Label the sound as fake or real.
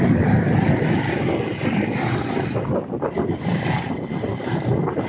real